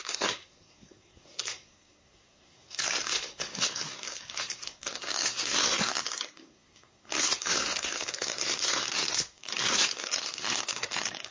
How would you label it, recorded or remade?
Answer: remade